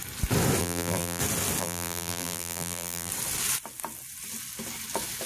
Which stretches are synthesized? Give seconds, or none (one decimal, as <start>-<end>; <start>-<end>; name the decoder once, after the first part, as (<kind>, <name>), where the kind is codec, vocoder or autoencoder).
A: 0.6-1.2 (vocoder, BigVGAN v2); 1.6-3.1